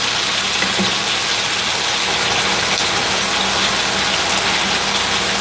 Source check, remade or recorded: recorded